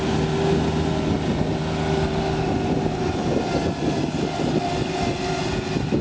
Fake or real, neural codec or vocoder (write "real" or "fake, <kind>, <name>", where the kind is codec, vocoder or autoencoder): real